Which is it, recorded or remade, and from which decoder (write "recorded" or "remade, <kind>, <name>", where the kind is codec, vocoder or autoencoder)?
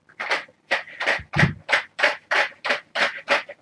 remade, vocoder, BigVGAN v2